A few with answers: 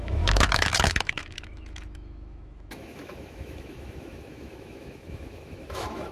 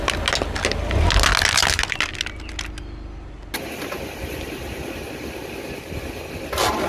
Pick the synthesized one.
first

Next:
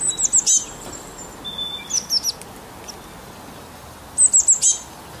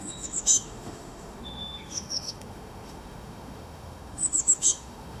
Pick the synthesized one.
second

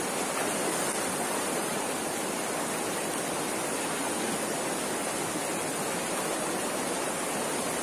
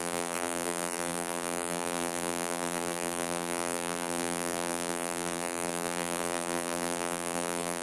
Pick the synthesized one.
second